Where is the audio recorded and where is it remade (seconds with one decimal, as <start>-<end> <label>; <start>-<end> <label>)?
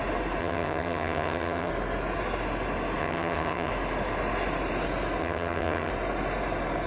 0.0-0.4 recorded; 0.4-1.7 remade; 1.7-3.0 recorded; 3.0-3.7 remade; 3.7-5.2 recorded; 5.2-5.9 remade; 5.9-6.9 recorded